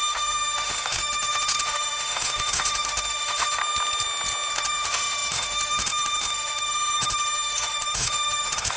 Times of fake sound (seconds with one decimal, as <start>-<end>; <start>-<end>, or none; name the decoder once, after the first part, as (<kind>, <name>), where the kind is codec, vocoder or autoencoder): 0.0-3.6 (autoencoder, DAC-VAE); 4.5-8.8